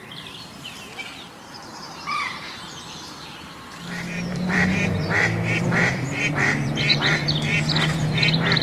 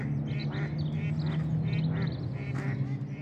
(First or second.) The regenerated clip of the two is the first